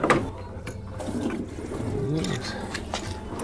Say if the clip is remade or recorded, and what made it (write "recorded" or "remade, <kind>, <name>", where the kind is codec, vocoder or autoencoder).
recorded